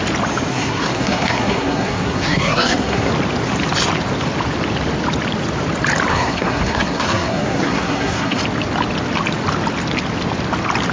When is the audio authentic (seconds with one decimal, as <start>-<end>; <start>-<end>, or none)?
0.0-0.5; 3.1-6.1; 8.4-10.9